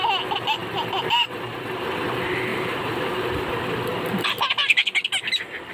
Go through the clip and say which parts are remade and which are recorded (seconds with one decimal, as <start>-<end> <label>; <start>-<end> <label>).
0.0-2.5 recorded; 2.5-3.4 remade; 3.4-5.7 recorded